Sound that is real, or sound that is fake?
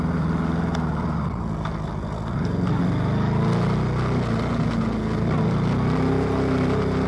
real